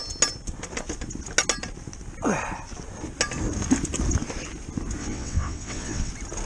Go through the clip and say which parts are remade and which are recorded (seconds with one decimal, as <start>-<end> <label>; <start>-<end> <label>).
0.0-5.0 recorded; 5.0-6.1 remade; 6.1-6.5 recorded